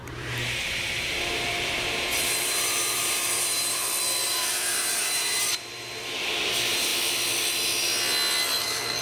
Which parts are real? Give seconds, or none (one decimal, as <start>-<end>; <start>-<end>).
3.8-4.3; 6.9-9.0